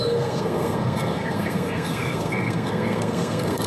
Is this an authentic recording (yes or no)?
no